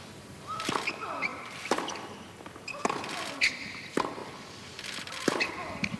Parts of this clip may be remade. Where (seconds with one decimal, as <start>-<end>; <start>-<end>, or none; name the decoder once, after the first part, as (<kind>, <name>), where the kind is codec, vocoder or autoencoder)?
none

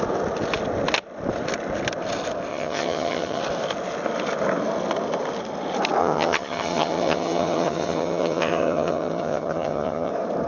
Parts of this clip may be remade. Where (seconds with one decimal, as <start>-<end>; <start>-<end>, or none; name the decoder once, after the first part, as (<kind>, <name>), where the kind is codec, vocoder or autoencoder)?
2.5-3.4 (vocoder, HiFi-GAN); 6.0-10.1

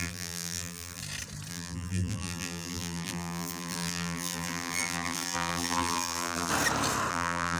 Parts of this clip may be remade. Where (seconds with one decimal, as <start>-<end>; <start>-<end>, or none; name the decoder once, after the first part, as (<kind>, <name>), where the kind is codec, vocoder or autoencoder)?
0.0-1.0 (vocoder, BigVGAN v2); 1.5-6.5; 7.1-7.6

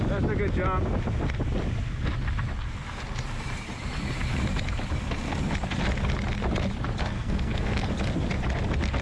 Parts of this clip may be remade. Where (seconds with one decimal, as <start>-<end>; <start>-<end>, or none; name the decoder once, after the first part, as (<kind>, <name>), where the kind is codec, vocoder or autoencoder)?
7.0-7.8 (codec, SNAC)

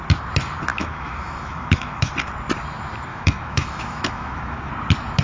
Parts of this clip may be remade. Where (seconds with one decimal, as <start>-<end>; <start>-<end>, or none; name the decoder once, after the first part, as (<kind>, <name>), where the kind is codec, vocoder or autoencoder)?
0.7-2.1 (autoencoder, DAC-VAE); 3.1-4.7